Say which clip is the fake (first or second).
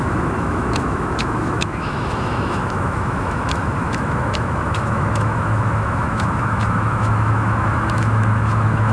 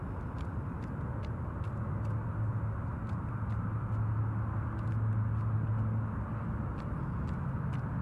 first